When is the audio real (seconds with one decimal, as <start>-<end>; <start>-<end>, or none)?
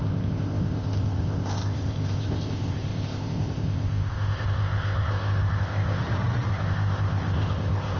6.0-6.5